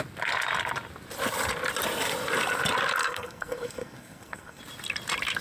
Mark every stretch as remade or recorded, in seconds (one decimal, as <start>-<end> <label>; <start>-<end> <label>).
0.0-3.0 recorded; 3.0-4.6 remade; 4.6-5.4 recorded